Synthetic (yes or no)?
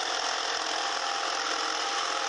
no